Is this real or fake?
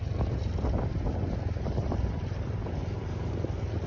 real